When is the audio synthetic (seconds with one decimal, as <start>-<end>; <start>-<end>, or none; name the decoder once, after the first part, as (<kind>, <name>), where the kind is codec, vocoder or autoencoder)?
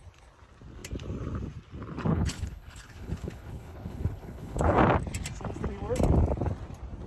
2.1-4.8 (codec, HILCodec)